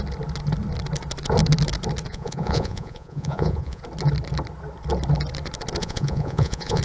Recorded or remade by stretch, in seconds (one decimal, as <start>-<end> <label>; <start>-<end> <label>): 0.0-2.1 recorded; 2.1-3.8 remade; 3.8-5.8 recorded; 5.8-6.8 remade